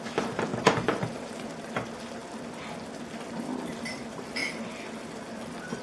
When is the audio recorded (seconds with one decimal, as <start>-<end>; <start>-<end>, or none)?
0.0-0.5; 1.3-5.8